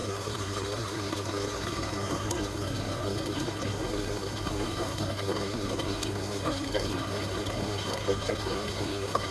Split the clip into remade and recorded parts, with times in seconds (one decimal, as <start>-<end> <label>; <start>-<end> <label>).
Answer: 0.0-9.3 remade